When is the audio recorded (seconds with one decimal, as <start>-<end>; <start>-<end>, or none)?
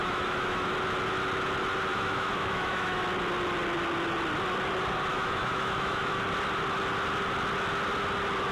0.7-1.9; 3.0-5.1; 6.2-8.5